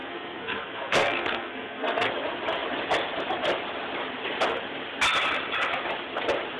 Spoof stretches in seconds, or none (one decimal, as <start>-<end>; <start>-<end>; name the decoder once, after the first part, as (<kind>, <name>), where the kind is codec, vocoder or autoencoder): 0.0-2.1 (codec, SNAC)